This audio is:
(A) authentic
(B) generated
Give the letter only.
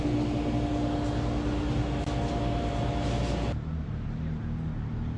A